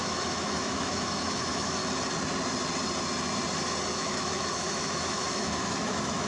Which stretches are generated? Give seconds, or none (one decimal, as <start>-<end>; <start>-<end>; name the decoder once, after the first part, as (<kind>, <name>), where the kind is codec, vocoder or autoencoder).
0.0-1.8 (autoencoder, DAC-VAE); 3.9-6.3